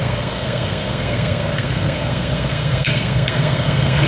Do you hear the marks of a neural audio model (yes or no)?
yes